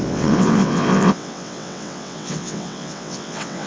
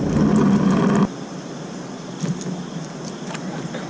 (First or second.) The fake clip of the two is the first